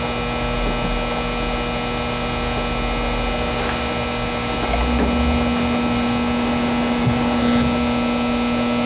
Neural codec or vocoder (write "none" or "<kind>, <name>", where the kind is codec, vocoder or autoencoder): none